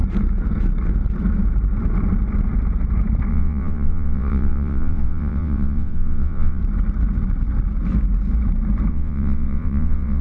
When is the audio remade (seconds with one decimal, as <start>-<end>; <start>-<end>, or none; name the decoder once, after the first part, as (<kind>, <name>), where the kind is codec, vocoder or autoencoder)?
3.3-6.6 (vocoder, WaveNeXt); 8.9-10.2